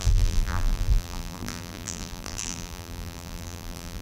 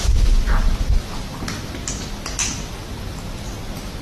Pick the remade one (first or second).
first